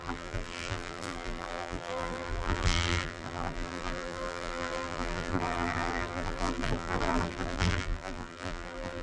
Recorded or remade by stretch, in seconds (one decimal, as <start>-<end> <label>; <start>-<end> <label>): 0.0-9.0 remade

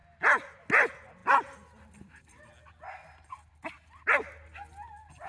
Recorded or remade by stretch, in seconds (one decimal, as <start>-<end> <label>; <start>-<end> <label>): 0.0-5.3 recorded